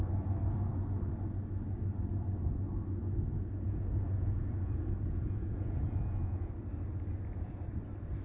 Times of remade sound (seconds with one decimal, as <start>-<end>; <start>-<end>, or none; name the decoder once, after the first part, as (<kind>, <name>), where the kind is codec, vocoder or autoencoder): 3.3-6.5 (vocoder, Vocos)